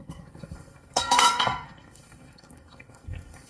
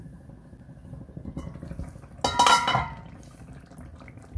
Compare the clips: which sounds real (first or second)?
second